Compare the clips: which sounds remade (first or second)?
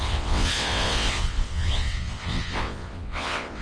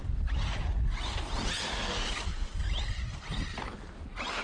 first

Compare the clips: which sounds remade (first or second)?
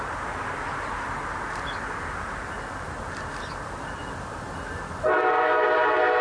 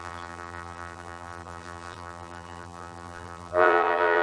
second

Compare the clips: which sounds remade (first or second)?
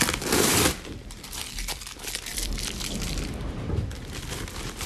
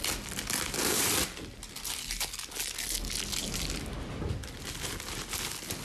first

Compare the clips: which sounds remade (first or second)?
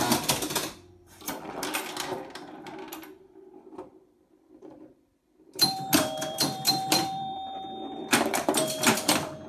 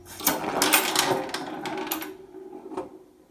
first